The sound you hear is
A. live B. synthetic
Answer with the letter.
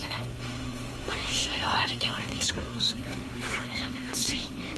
B